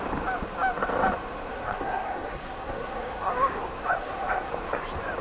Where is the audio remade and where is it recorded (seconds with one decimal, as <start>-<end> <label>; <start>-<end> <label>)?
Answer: 0.0-1.5 recorded; 1.5-3.3 remade; 3.3-3.8 recorded; 3.8-4.5 remade; 4.5-5.2 recorded